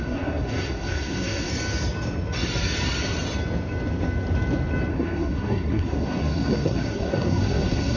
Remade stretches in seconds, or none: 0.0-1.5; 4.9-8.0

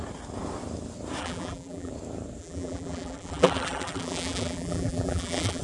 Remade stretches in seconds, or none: 1.2-1.9; 2.4-5.6

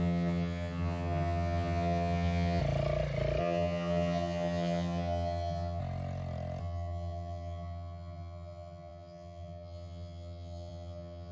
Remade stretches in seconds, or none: 0.0-2.6; 3.4-5.8; 6.6-11.3

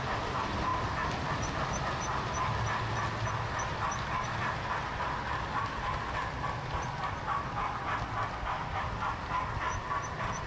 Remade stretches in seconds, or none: none